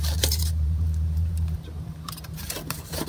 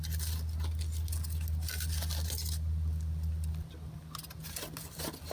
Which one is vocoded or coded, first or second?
first